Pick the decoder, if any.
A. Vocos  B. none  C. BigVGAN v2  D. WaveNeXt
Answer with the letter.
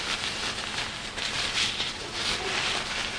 B